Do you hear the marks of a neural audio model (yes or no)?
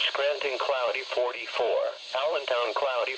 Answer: no